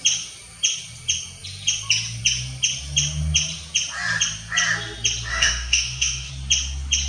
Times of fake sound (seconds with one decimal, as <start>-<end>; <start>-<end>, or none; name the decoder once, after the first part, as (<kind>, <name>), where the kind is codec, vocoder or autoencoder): 5.3-6.3 (autoencoder, DAC-VAE)